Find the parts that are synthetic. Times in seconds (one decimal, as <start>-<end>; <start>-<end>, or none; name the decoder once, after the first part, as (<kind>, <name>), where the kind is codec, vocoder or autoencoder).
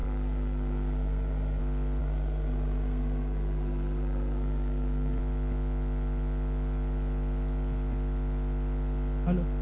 0.0-1.6 (codec, SNAC); 2.0-5.2